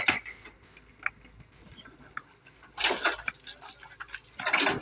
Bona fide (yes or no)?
yes